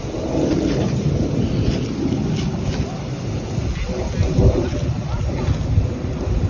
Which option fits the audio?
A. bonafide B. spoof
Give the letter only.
A